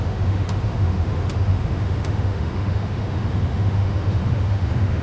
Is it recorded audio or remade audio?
remade